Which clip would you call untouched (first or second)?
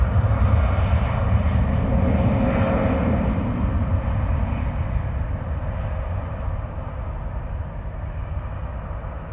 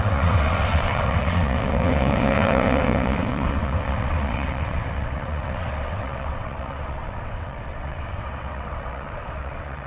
first